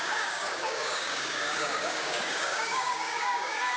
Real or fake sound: fake